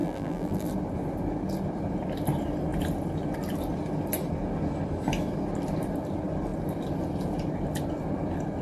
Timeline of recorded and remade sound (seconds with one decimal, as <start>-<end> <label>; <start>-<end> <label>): 0.0-0.7 remade; 0.7-8.6 recorded